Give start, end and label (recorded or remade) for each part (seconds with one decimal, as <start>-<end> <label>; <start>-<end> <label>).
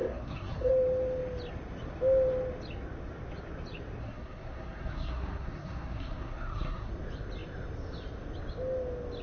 0.0-0.7 remade; 0.7-4.0 recorded; 4.0-6.9 remade; 6.9-9.2 recorded